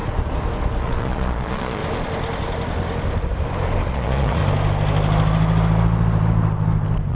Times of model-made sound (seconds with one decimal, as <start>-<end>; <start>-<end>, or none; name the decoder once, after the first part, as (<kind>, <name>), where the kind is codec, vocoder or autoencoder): 0.8-1.8 (vocoder, Vocos); 3.9-4.4